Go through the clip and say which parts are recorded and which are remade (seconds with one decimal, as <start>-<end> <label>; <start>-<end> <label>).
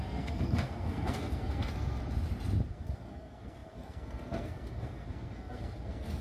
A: 0.0-2.0 remade; 2.0-2.7 recorded; 2.7-6.2 remade